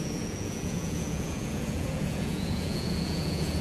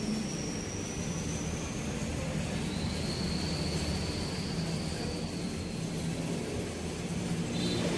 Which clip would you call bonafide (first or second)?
second